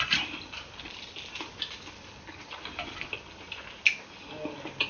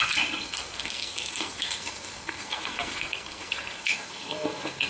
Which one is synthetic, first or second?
second